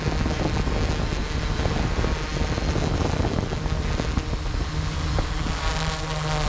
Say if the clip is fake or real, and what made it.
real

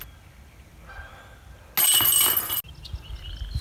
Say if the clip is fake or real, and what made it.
real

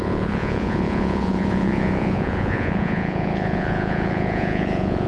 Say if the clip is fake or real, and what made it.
fake, vocoder, Vocos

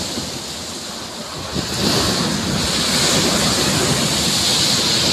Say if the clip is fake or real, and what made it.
real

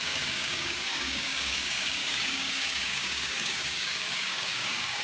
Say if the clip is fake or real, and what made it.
fake, codec, DAC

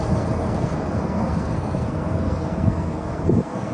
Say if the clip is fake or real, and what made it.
fake, codec, SNAC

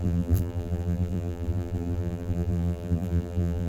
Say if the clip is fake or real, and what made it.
fake, vocoder, BigVGAN v2